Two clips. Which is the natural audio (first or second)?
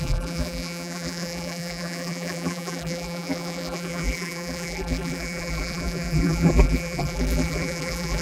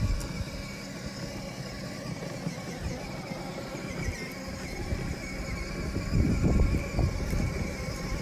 second